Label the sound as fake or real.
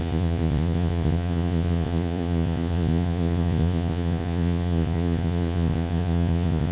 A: fake